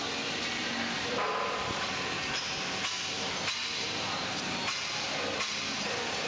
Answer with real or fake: real